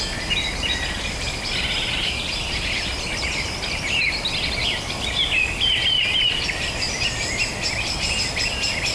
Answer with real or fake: fake